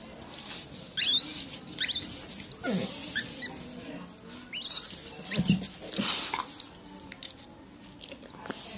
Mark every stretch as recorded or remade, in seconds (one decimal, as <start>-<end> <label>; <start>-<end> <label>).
0.0-8.8 recorded